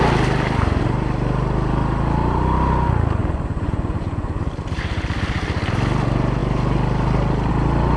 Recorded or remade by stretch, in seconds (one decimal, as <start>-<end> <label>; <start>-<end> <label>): 0.0-3.2 recorded; 3.2-4.4 remade; 4.4-8.0 recorded